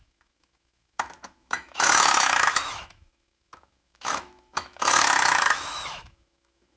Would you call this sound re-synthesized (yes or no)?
yes